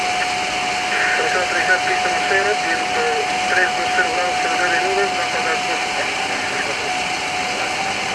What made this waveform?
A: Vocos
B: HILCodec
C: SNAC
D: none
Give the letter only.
D